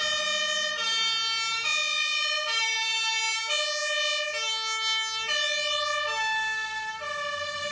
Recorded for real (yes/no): yes